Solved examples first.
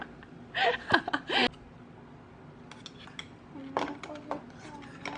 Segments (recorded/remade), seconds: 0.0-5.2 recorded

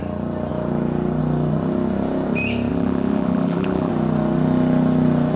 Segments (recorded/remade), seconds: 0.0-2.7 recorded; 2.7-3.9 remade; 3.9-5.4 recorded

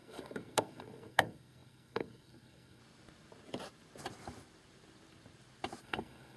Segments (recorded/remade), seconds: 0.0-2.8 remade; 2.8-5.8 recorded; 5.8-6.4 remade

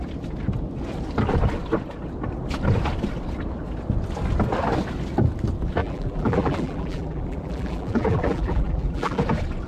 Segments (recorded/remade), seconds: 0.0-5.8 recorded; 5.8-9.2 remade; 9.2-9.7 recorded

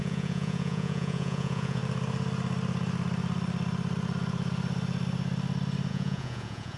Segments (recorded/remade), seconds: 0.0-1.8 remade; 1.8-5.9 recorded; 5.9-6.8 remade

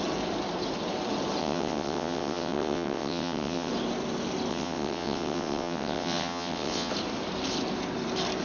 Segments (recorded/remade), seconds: 0.0-1.4 recorded; 1.4-3.7 remade; 3.7-4.5 recorded; 4.5-6.9 remade; 6.9-8.4 recorded

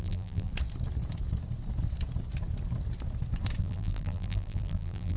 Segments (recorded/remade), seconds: 0.0-0.5 remade; 0.5-3.6 recorded; 3.6-5.2 remade